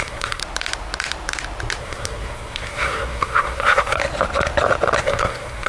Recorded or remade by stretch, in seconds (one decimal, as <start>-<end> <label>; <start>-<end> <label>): 0.0-0.4 remade; 0.4-1.8 recorded; 1.8-4.0 remade; 4.0-5.0 recorded; 5.0-5.7 remade